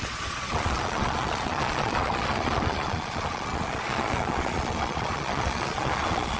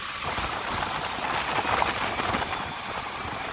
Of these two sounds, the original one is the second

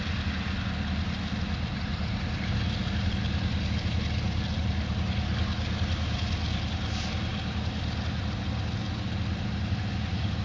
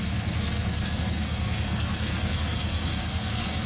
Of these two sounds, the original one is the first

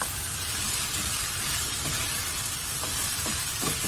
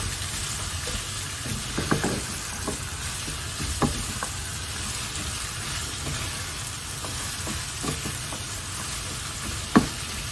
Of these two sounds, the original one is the second